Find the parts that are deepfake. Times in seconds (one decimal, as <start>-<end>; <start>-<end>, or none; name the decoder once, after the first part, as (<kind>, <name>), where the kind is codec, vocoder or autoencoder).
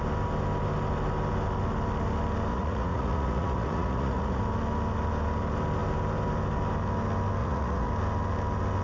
2.5-4.4 (vocoder, Vocos); 7.4-7.9